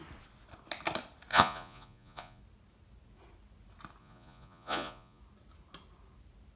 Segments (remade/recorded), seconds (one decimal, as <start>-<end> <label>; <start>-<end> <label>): 0.0-1.3 recorded; 1.3-2.4 remade; 2.4-4.0 recorded; 4.0-5.2 remade; 5.2-6.6 recorded